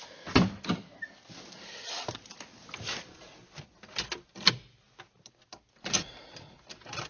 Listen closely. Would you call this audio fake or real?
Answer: real